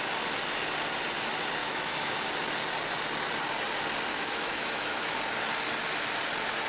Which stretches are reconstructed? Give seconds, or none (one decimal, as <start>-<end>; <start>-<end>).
1.6-2.3; 4.1-5.2